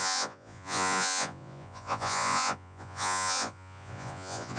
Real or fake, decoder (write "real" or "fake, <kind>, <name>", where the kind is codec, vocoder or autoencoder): fake, vocoder, Vocos